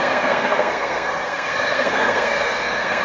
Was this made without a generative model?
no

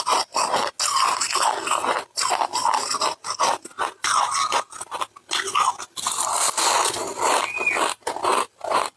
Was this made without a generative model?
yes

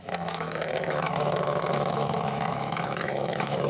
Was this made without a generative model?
no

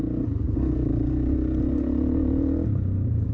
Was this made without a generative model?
yes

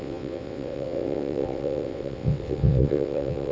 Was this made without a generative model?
no